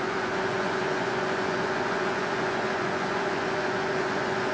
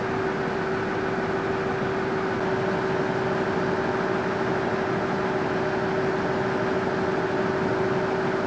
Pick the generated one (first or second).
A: first